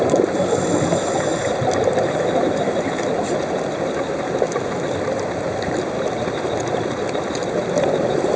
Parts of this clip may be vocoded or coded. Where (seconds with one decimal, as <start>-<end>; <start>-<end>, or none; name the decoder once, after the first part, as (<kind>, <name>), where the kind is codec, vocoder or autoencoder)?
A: none